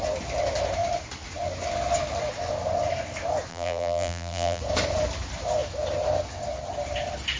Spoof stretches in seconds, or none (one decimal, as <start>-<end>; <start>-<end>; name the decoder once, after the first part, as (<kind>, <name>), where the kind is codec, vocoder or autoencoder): 3.5-4.6 (vocoder, BigVGAN v2)